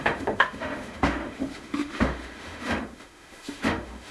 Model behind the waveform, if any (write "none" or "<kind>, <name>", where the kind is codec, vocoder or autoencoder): autoencoder, DAC-VAE